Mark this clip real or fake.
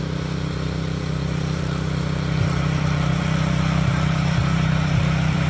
fake